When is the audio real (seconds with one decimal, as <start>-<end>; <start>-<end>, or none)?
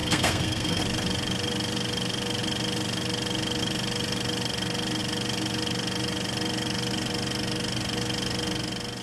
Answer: 0.8-9.0